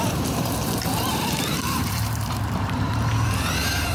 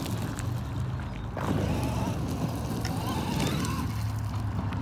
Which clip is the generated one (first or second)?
first